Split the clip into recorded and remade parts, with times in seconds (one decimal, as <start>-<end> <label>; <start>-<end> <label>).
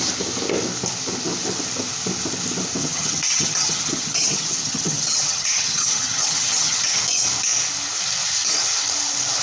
0.0-2.8 recorded; 2.8-7.0 remade; 7.0-9.4 recorded